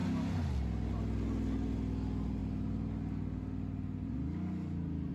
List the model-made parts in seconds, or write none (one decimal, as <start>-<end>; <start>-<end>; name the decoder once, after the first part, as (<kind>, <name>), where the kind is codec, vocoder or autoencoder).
none